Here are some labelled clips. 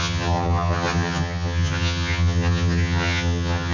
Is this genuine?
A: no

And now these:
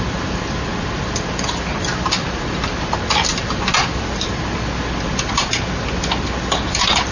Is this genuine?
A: yes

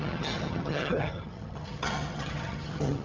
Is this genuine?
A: no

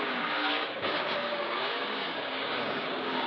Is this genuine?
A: no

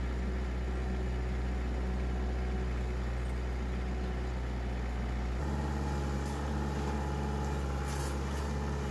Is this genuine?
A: yes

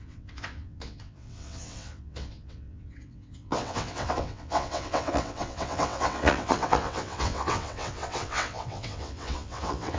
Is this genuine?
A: no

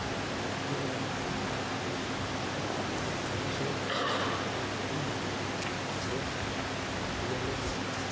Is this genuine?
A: yes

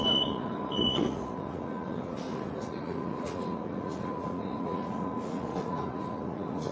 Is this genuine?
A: no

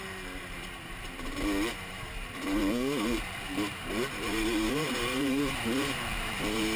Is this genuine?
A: no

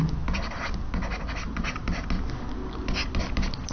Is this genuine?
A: yes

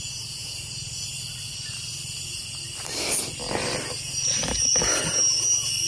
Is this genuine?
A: yes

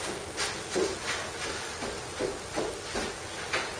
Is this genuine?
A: yes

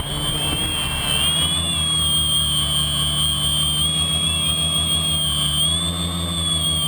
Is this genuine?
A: yes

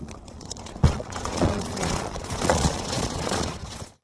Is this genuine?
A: no